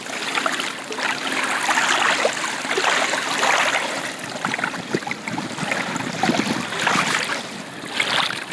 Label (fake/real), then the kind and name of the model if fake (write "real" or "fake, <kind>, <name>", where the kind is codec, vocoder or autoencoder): real